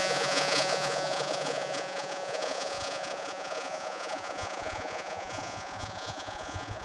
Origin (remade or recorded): remade